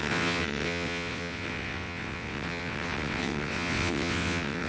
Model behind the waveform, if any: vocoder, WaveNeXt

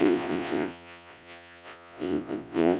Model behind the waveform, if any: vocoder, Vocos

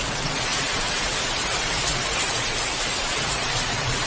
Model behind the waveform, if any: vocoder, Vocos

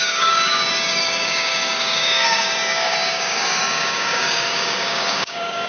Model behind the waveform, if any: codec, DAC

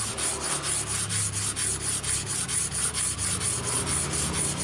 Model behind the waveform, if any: none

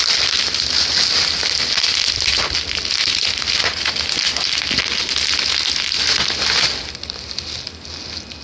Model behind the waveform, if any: none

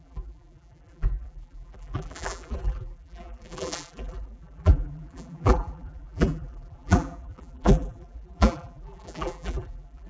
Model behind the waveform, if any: vocoder, BigVGAN v2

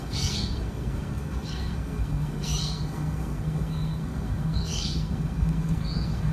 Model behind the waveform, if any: codec, SNAC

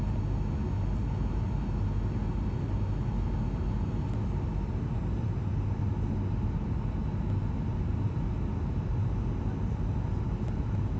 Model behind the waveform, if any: none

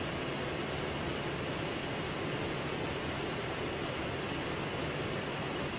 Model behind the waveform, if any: none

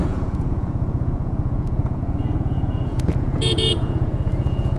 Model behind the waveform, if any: vocoder, Vocos